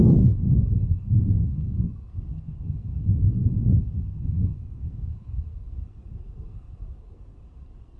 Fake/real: fake